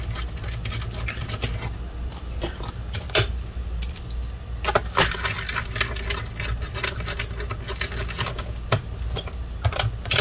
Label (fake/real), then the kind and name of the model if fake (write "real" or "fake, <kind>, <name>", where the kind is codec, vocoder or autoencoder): real